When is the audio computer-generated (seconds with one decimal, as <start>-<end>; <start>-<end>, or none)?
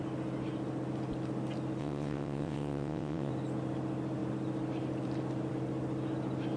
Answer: 1.8-3.3